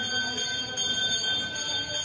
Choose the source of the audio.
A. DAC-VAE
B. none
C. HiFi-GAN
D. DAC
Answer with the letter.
B